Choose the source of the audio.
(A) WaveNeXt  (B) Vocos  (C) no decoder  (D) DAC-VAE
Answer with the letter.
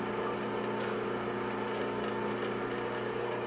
C